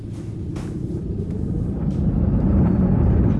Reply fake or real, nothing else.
real